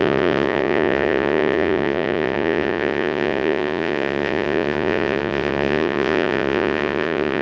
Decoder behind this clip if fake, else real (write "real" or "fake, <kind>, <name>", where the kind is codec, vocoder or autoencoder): fake, vocoder, Vocos